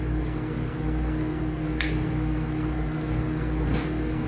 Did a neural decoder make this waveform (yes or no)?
yes